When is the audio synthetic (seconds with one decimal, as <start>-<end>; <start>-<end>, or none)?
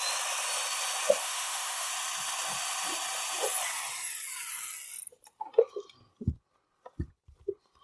1.2-1.9